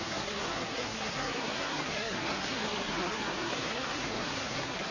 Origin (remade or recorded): remade